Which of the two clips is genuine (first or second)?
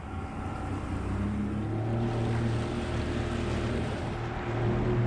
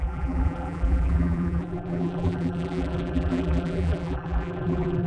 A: first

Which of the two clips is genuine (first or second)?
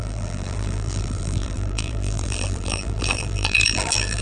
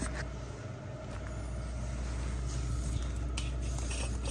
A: second